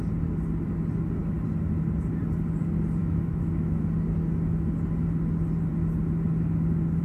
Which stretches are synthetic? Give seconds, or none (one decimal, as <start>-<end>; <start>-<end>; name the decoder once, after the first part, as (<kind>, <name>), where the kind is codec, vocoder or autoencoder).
3.0-3.8 (autoencoder, DAC-VAE)